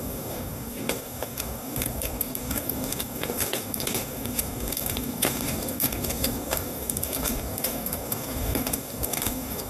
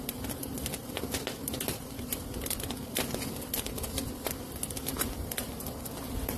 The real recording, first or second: second